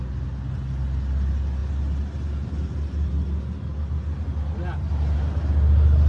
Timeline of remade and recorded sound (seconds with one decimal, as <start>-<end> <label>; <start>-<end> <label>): 0.0-6.1 recorded

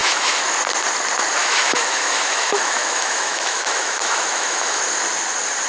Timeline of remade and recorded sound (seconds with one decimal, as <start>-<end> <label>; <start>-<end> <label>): 0.0-0.5 remade; 0.5-1.4 recorded; 1.4-4.8 remade; 4.8-5.7 recorded